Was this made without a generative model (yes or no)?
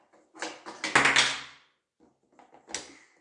yes